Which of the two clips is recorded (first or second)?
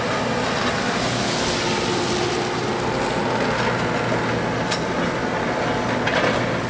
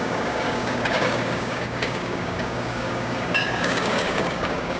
first